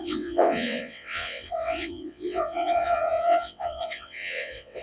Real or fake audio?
fake